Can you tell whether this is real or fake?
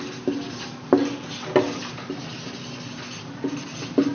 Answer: real